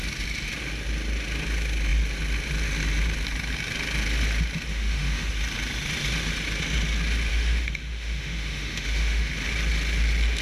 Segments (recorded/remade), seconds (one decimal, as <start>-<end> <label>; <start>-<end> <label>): 0.0-4.7 recorded; 4.7-5.3 remade; 5.3-7.3 recorded; 7.3-9.3 remade; 9.3-10.4 recorded

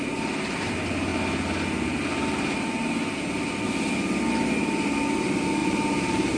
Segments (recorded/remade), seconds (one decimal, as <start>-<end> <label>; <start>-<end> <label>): 0.0-5.6 recorded; 5.6-6.4 remade

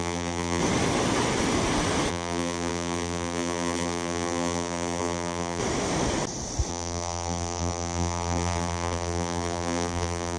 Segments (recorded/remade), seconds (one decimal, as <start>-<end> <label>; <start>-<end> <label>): 0.0-0.6 remade; 0.6-2.1 recorded; 2.1-5.6 remade; 5.6-6.7 recorded; 6.7-10.4 remade

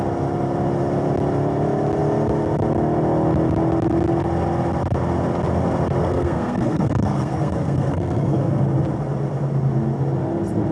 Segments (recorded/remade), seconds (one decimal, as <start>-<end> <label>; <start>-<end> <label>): 0.0-6.0 recorded; 6.0-8.6 remade; 8.6-10.7 recorded

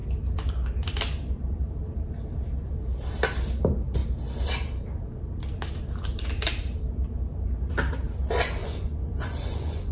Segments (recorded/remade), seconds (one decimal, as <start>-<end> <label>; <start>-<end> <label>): 0.0-8.6 recorded; 8.6-9.9 remade

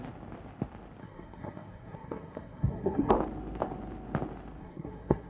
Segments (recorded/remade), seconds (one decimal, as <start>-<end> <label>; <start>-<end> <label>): 0.0-1.0 recorded; 1.0-3.1 remade; 3.1-4.6 recorded; 4.6-5.3 remade

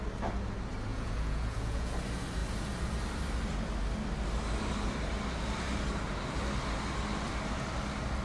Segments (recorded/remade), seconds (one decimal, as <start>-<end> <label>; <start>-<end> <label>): 0.0-0.9 recorded; 0.9-1.9 remade; 1.9-8.2 recorded